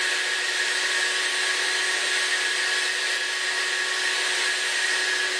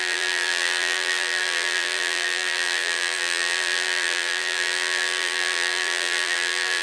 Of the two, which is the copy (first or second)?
second